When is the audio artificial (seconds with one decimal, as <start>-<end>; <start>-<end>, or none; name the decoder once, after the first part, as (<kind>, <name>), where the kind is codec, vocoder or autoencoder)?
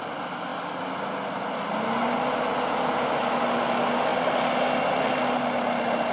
none